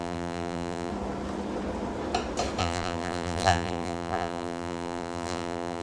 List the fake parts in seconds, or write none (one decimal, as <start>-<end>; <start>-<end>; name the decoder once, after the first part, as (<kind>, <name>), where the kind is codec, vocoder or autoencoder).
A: 0.0-0.9 (vocoder, BigVGAN v2); 2.6-5.8